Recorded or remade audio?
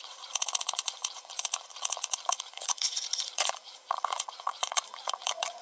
remade